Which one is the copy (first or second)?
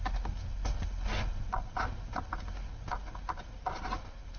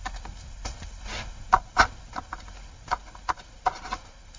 second